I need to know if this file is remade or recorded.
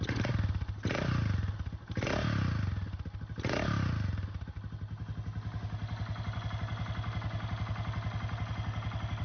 recorded